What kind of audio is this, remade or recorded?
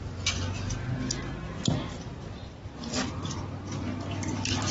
recorded